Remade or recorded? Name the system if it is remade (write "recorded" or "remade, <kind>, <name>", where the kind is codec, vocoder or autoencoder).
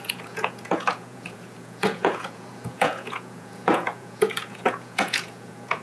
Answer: remade, vocoder, Vocos